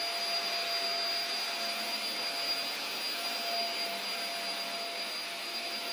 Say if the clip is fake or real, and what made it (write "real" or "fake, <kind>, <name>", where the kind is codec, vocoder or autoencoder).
real